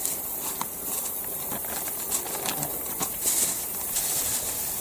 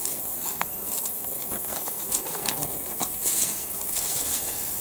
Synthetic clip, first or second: second